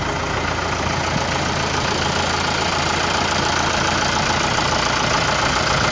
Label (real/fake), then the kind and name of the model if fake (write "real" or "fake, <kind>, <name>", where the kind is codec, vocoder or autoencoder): real